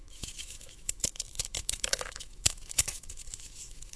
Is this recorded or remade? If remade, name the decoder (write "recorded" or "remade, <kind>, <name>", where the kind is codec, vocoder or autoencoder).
remade, autoencoder, DAC-VAE